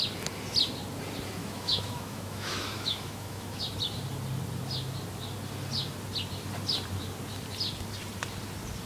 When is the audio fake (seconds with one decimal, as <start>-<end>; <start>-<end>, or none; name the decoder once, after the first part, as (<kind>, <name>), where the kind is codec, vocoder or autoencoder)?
1.4-3.6 (autoencoder, DAC-VAE)

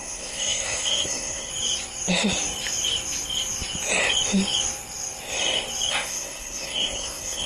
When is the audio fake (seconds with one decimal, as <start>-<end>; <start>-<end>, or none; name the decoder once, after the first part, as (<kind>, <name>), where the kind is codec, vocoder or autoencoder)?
0.0-1.5 (codec, SNAC); 5.9-7.5

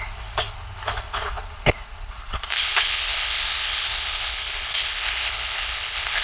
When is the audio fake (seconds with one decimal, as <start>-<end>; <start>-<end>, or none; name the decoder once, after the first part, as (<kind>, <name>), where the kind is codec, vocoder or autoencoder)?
0.0-6.2 (codec, HILCodec)

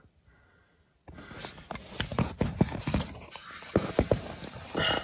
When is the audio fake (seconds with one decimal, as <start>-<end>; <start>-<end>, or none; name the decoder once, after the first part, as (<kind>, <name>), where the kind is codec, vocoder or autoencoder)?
none

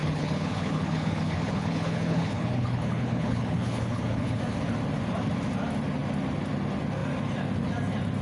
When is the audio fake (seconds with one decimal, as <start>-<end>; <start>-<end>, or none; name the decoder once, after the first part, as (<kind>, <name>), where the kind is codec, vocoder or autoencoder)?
0.0-4.4 (codec, HILCodec)

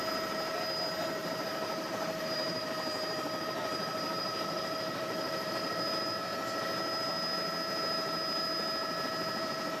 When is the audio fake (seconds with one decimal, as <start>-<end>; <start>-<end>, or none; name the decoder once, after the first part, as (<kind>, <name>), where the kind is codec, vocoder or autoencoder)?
1.2-5.7 (vocoder, BigVGAN v2)

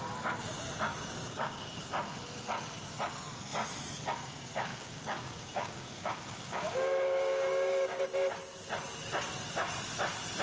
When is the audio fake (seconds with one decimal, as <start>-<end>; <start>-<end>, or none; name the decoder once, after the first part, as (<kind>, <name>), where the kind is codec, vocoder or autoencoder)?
0.9-1.8 (codec, DAC); 4.7-8.0